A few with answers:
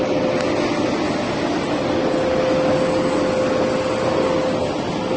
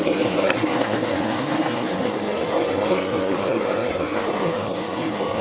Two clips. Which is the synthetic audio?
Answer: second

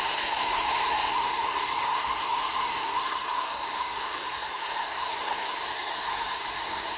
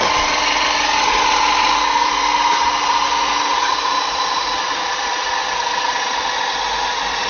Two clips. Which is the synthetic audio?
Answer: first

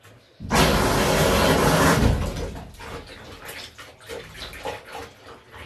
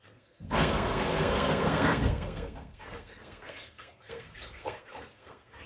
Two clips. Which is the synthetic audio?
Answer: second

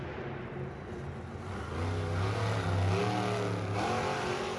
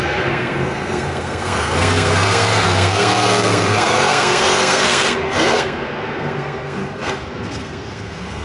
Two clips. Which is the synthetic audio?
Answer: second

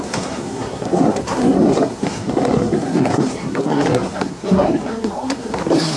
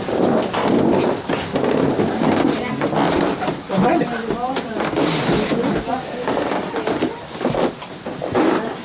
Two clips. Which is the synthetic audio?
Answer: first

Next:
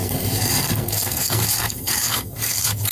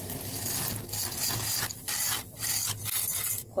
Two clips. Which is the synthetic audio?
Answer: first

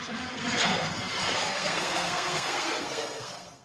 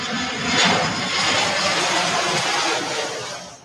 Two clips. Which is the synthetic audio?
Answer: first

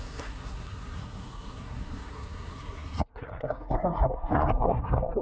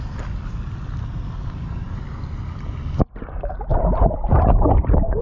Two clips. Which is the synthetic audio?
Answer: first